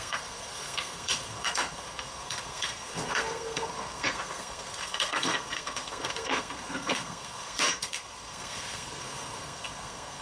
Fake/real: fake